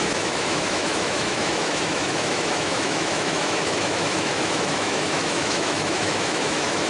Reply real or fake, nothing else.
fake